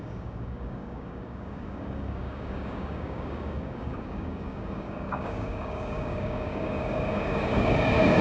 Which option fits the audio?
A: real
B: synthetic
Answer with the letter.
B